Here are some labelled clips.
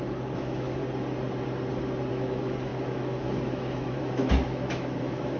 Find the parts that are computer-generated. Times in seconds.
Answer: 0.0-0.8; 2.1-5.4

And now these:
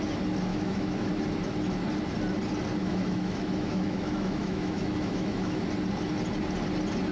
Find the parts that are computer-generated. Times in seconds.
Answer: 0.5-1.1; 2.8-5.6

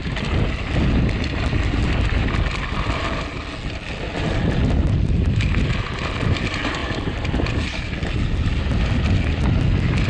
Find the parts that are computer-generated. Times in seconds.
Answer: none

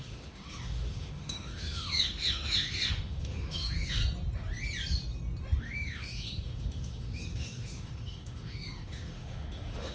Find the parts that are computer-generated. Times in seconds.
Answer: 0.0-4.0; 5.6-9.9

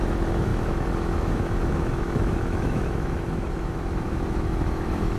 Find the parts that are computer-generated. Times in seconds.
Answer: 0.0-5.2

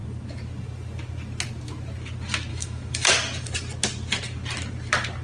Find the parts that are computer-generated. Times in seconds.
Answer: 2.5-3.1